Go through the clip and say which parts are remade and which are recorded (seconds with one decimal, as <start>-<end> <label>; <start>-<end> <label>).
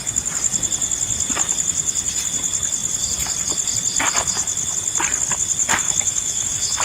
0.0-5.6 recorded; 5.6-6.8 remade